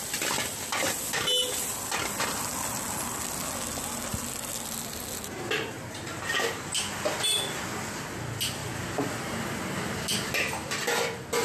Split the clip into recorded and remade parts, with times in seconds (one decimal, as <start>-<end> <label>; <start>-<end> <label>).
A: 0.0-11.4 recorded